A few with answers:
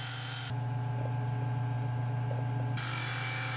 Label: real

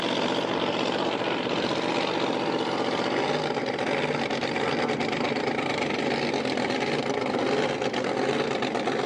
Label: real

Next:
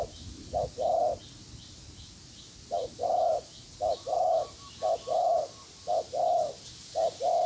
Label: real